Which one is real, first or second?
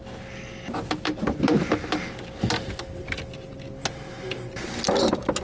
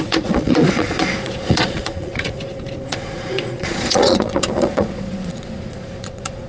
first